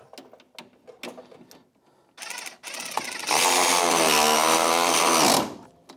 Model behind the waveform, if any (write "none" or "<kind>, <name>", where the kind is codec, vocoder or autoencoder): none